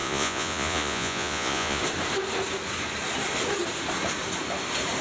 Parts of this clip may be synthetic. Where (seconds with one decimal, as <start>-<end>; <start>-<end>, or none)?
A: 0.0-1.8